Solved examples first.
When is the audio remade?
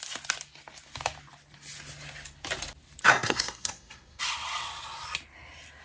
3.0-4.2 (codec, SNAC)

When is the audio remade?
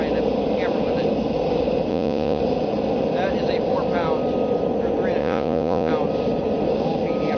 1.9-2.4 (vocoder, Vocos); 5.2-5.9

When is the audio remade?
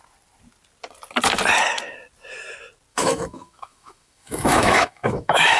2.9-5.6 (autoencoder, DAC-VAE)